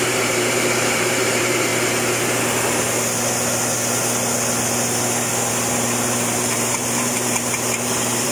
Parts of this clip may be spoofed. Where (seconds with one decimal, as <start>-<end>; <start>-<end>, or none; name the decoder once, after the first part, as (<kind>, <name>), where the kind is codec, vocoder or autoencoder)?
0.0-1.7 (vocoder, BigVGAN v2); 5.5-8.3